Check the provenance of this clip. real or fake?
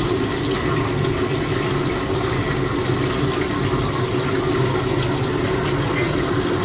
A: real